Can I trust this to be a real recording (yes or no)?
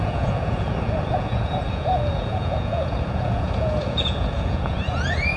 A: no